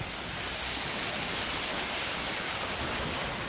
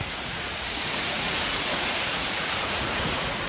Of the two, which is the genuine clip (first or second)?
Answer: first